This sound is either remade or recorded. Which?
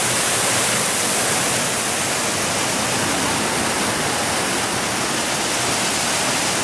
recorded